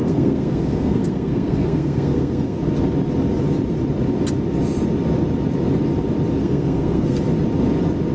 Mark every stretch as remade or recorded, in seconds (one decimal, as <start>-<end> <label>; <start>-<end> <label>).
0.0-2.6 remade; 2.6-6.4 recorded; 6.4-7.2 remade; 7.2-8.1 recorded